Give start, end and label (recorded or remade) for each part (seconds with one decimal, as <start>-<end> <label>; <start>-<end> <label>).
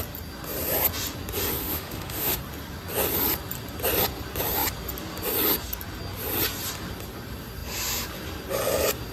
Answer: 0.0-1.6 recorded; 1.6-2.4 remade; 2.4-9.1 recorded